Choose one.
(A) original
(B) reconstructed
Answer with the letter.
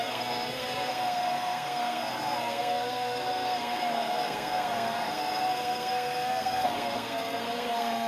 B